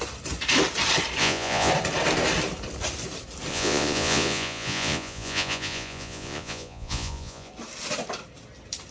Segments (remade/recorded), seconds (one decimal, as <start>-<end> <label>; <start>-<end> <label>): 0.0-1.2 recorded; 1.2-1.7 remade; 1.7-3.5 recorded; 3.5-7.5 remade; 7.5-8.9 recorded